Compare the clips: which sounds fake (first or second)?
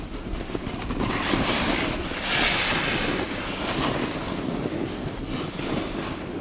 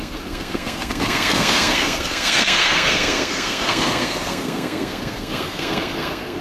second